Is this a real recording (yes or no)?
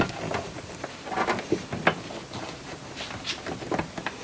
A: yes